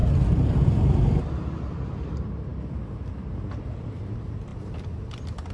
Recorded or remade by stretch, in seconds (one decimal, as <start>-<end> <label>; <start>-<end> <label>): 0.0-1.2 remade; 1.2-4.5 recorded; 4.5-5.5 remade